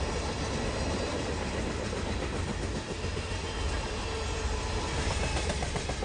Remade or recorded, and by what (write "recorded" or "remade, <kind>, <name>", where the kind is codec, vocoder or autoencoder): recorded